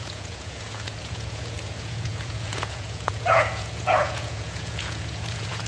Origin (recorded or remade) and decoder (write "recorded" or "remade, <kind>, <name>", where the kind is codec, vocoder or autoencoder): remade, vocoder, Vocos